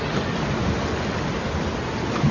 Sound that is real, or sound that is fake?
real